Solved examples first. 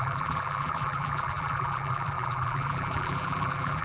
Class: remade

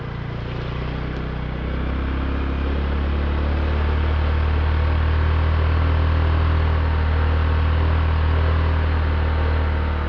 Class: recorded